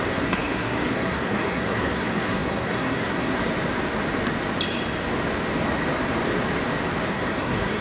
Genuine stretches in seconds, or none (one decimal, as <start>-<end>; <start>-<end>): 3.5-7.1